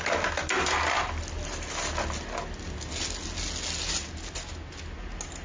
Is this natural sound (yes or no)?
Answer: yes